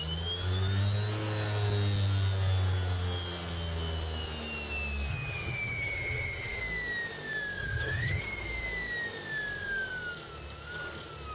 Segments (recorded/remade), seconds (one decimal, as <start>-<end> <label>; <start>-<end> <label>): 0.0-5.1 recorded; 5.1-6.6 remade; 6.6-7.6 recorded; 7.6-8.2 remade; 8.2-11.3 recorded